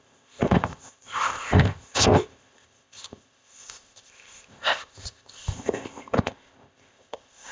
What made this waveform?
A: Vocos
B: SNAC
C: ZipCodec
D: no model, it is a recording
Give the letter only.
C